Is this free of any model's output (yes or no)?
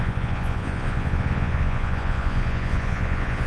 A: no